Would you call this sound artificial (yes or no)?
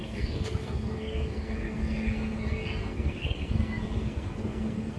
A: yes